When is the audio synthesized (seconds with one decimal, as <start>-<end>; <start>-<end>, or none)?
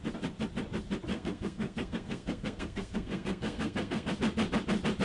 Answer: 1.1-4.1